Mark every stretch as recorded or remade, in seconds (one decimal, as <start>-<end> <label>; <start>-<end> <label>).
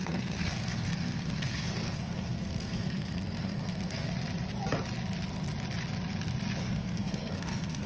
0.0-4.1 remade; 4.1-6.6 recorded; 6.6-7.9 remade